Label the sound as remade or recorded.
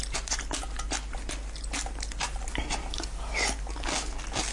recorded